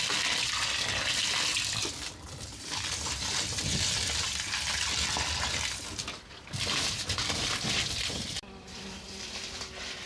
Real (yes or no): no